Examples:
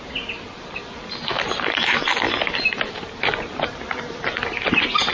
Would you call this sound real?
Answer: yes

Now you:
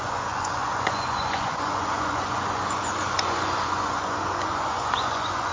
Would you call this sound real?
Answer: no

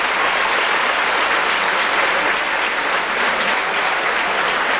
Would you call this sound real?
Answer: no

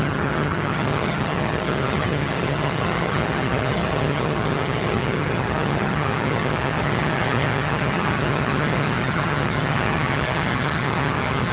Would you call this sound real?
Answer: no